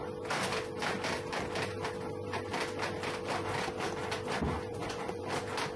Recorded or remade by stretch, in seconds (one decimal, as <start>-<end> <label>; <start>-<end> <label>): 0.0-4.7 recorded; 4.7-5.2 remade; 5.2-5.8 recorded